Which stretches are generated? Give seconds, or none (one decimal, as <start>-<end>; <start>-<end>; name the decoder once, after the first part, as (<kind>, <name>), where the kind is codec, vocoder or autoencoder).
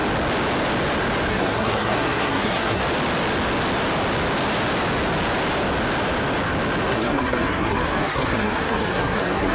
1.3-2.8 (codec, SNAC); 6.9-9.5